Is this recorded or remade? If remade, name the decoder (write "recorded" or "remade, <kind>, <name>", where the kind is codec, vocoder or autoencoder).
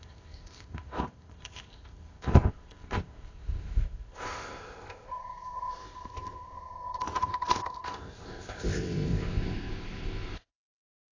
remade, codec, ZipCodec